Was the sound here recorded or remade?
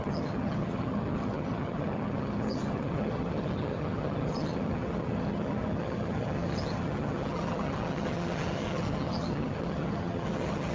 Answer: remade